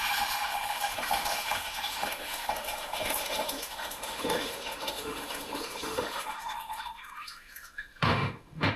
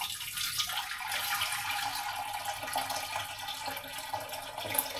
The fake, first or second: first